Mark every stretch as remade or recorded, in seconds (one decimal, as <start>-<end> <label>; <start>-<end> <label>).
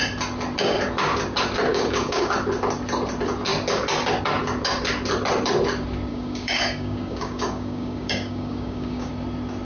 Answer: 0.0-1.7 recorded; 1.7-2.3 remade; 2.3-6.1 recorded; 6.1-9.1 remade; 9.1-9.6 recorded